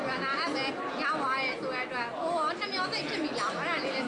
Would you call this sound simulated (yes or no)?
no